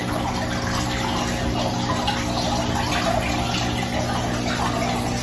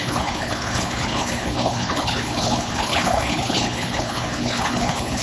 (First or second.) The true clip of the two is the first